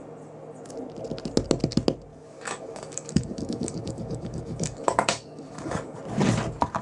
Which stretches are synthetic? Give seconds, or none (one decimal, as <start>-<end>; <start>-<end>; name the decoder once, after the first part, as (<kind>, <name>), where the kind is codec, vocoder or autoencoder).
2.1-6.0 (codec, DAC)